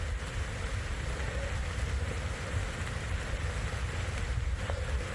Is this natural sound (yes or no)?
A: yes